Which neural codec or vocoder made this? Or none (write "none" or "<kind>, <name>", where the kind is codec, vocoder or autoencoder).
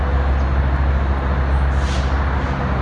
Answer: none